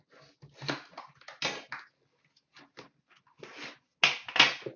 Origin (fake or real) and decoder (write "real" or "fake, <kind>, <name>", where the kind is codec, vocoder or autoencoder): real